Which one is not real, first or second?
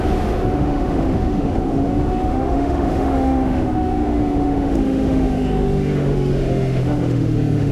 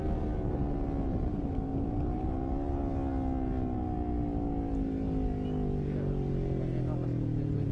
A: first